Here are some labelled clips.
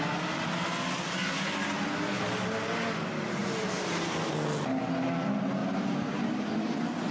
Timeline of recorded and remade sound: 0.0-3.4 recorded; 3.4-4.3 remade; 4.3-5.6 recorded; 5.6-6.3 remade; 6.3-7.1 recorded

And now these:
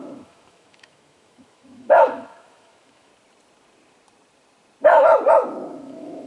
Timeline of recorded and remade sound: 0.0-3.1 remade; 3.1-5.7 recorded; 5.7-6.3 remade

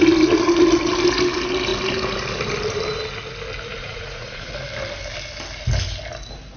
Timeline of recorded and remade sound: 0.0-3.8 recorded; 3.8-4.5 remade; 4.5-6.6 recorded

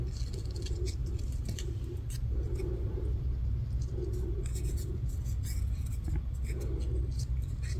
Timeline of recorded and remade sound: 0.0-1.0 recorded; 1.0-1.8 remade; 1.8-7.8 recorded